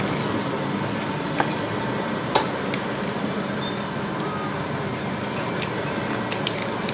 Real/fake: real